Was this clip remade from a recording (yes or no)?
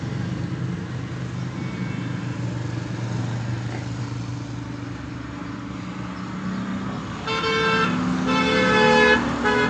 no